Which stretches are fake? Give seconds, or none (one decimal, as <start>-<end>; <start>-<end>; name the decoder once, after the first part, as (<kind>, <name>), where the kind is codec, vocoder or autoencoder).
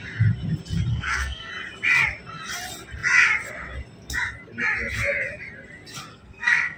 0.9-1.5 (codec, SNAC); 6.1-6.8